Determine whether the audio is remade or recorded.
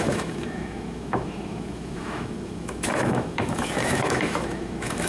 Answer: remade